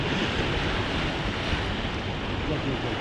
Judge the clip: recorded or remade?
recorded